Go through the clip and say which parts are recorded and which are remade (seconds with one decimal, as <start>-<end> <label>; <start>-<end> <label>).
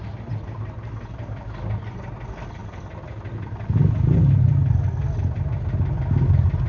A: 0.0-6.7 recorded